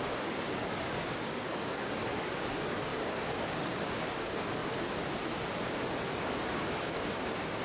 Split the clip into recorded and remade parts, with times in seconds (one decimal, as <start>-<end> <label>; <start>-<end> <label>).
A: 0.0-4.6 remade; 4.6-6.2 recorded; 6.2-7.6 remade